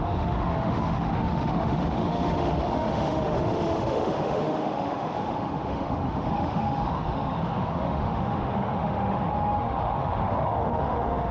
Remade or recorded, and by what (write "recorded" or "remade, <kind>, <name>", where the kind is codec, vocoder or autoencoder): remade, autoencoder, DAC-VAE